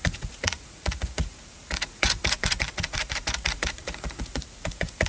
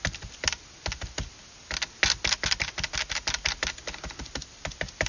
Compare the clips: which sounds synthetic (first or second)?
first